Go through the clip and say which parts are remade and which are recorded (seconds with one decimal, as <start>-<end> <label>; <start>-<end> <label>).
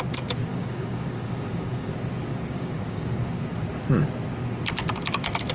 0.0-0.5 recorded; 0.5-1.9 remade; 1.9-2.3 recorded; 2.3-3.2 remade; 3.2-5.5 recorded